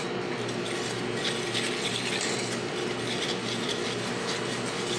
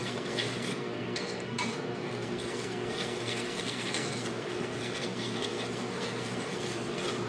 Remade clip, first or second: second